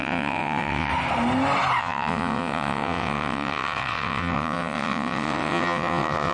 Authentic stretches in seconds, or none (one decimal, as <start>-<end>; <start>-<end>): 0.9-1.8